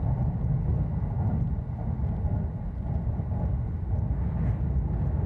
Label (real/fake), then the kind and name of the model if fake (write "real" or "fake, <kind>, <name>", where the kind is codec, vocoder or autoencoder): real